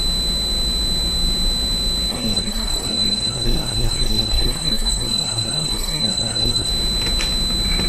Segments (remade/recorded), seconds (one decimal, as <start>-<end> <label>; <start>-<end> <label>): 0.0-2.1 recorded; 2.1-6.7 remade; 6.7-7.9 recorded